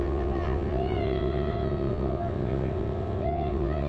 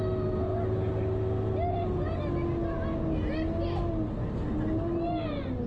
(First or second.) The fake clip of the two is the first